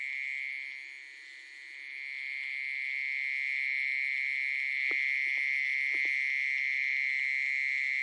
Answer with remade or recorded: recorded